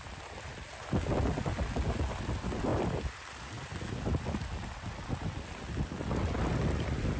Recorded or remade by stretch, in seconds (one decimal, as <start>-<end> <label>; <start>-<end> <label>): 0.0-7.2 recorded